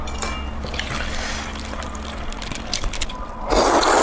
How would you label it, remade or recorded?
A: recorded